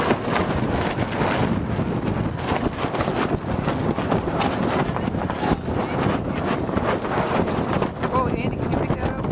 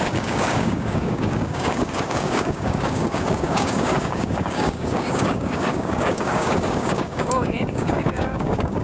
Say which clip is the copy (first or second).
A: second